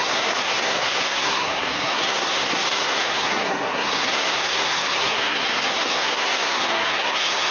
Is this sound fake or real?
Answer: fake